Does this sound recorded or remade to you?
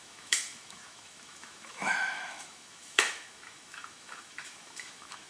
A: remade